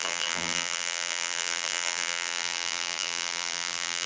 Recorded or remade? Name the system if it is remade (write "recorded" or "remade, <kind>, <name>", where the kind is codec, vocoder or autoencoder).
remade, vocoder, BigVGAN v2